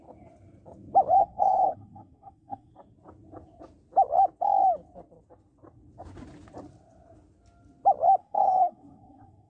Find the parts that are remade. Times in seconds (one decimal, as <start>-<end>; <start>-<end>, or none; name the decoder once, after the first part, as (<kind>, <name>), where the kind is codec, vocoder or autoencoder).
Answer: 1.2-2.7 (codec, SNAC); 8.2-9.5